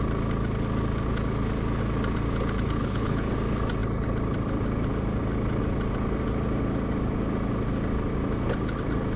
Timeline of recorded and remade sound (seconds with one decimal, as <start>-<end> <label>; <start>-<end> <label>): 0.0-2.8 recorded; 2.8-3.3 remade; 3.3-9.2 recorded